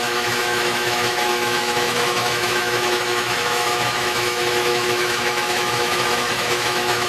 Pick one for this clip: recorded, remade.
remade